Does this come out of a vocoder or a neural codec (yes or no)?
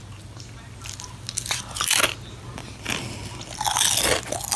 no